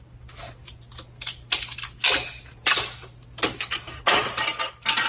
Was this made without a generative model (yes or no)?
yes